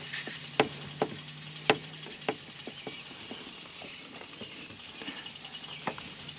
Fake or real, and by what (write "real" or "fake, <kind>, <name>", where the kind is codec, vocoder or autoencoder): real